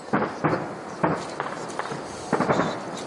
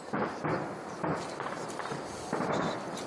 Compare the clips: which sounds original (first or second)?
first